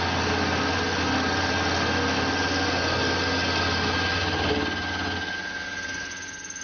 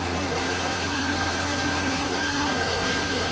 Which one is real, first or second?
first